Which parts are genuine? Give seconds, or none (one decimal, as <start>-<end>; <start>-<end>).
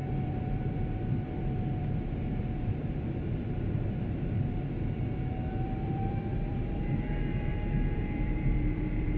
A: none